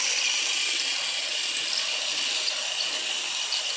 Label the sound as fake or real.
real